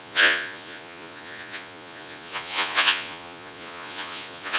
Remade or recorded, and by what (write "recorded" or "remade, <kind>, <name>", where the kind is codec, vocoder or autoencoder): remade, vocoder, Vocos